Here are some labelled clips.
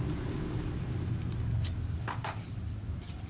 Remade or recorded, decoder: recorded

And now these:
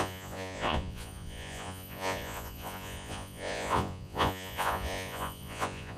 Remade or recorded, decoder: remade, vocoder, Vocos